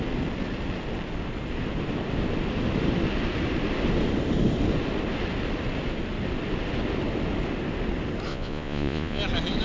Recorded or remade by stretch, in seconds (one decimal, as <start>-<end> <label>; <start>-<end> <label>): 0.0-8.3 recorded; 8.3-9.2 remade; 9.2-9.6 recorded